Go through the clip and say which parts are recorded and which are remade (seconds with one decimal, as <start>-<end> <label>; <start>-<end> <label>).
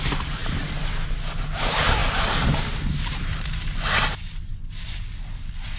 0.0-5.8 recorded